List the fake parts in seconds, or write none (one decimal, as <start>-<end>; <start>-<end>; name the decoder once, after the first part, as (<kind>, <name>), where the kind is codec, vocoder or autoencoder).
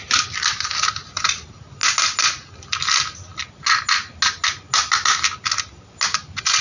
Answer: none